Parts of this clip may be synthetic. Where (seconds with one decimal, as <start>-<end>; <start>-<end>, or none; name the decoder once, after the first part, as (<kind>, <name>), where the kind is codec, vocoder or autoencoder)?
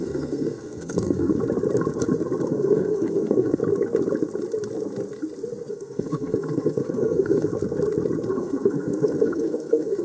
0.0-1.3 (codec, SNAC); 2.5-3.6; 5.7-7.5; 8.3-10.0